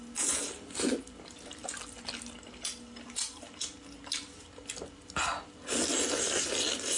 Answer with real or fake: real